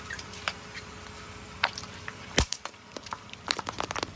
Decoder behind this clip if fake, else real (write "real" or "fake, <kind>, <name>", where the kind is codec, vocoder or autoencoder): fake, vocoder, BigVGAN v2